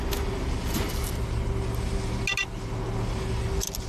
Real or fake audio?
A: real